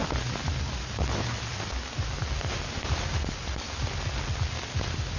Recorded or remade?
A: recorded